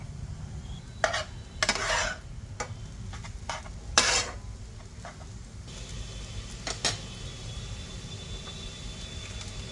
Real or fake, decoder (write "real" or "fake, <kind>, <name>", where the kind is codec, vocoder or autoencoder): real